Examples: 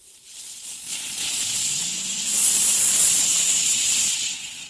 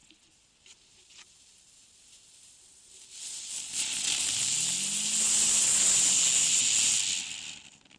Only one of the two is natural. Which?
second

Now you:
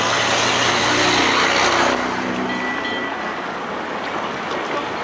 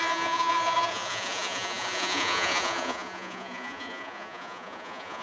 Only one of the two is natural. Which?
first